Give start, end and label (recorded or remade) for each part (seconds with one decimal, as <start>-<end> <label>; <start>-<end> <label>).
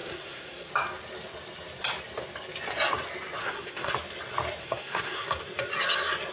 0.0-0.7 remade; 0.7-3.4 recorded; 3.4-3.9 remade; 3.9-4.6 recorded; 4.6-5.4 remade; 5.4-6.3 recorded